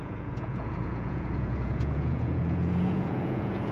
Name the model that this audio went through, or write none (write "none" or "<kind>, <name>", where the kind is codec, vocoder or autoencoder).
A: vocoder, Vocos